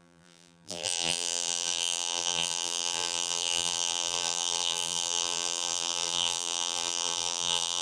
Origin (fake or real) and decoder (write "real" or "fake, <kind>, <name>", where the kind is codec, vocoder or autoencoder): fake, vocoder, BigVGAN v2